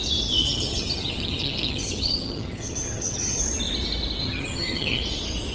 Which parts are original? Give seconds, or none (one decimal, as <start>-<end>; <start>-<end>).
0.0-0.4; 3.4-4.2; 5.0-5.5

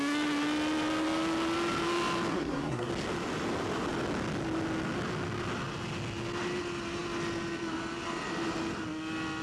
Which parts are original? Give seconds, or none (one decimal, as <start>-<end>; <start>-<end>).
0.0-2.3; 2.9-9.4

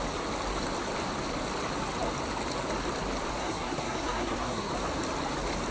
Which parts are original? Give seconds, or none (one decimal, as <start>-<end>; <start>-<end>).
0.0-3.4; 4.7-5.7

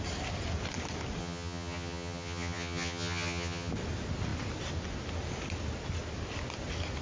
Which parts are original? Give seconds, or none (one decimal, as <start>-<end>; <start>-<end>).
0.0-1.2; 3.7-7.0

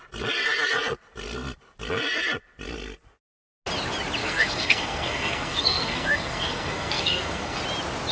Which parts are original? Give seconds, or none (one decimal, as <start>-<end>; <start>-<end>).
0.0-4.2; 7.6-8.1

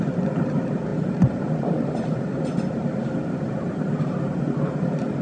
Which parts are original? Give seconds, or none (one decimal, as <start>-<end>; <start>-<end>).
none